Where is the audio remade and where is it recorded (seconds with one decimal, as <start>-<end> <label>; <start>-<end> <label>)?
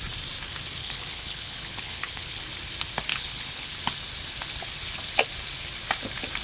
0.0-0.8 recorded; 0.8-2.4 remade; 2.4-3.1 recorded; 3.1-3.7 remade; 3.7-6.4 recorded